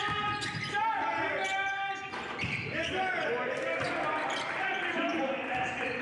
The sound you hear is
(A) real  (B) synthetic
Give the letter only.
A